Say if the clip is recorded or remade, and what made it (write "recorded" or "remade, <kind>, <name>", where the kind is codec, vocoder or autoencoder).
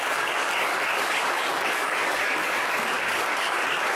remade, codec, DAC